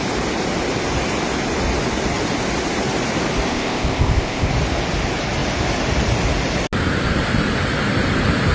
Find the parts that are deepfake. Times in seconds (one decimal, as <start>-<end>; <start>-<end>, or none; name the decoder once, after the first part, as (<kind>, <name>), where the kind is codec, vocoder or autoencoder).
3.5-4.5 (codec, ZipCodec)